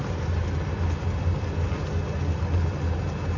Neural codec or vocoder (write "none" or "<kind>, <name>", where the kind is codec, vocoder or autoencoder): none